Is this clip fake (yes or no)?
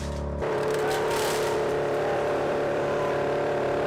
yes